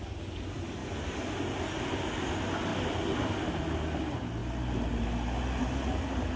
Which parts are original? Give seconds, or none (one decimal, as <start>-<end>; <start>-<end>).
0.0-6.4